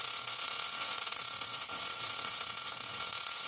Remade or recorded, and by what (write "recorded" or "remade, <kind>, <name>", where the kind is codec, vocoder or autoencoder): remade, vocoder, WaveNeXt